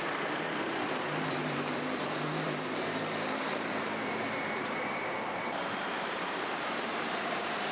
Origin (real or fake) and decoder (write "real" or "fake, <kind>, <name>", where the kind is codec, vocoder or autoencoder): fake, vocoder, BigVGAN v2